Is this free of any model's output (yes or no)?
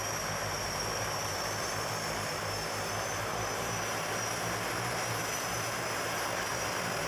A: no